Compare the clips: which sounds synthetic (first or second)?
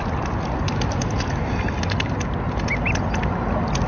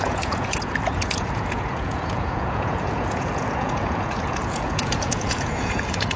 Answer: second